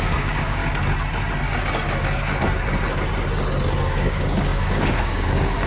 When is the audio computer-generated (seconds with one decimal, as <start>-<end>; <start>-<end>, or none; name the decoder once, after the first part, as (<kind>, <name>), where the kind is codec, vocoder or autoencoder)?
0.0-0.6 (codec, DAC); 3.8-5.7